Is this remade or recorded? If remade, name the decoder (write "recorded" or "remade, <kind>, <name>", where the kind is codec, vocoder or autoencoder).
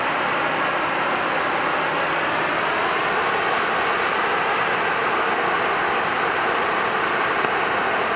recorded